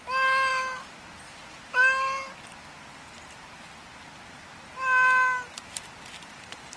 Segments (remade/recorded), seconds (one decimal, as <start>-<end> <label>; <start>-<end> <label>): 0.0-6.8 recorded